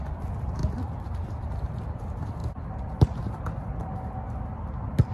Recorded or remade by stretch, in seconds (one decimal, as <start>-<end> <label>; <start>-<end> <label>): 0.0-2.4 remade; 2.4-4.6 recorded; 4.6-5.1 remade